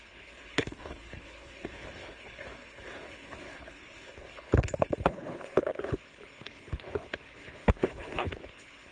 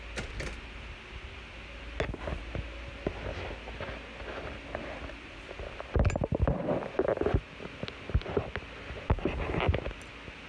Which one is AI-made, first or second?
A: first